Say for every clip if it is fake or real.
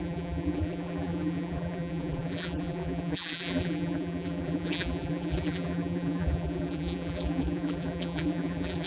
fake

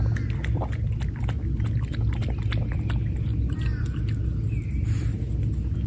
real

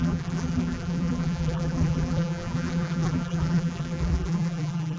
fake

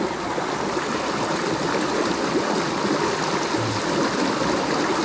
real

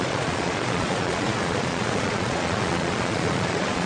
fake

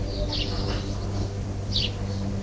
fake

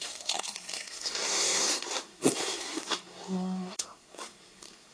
fake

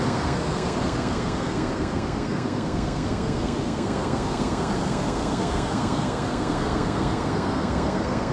fake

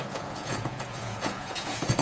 fake